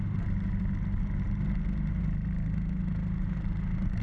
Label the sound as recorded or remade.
recorded